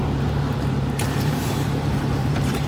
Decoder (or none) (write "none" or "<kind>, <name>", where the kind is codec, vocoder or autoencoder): vocoder, BigVGAN v2